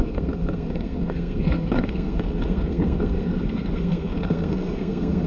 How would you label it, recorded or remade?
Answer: remade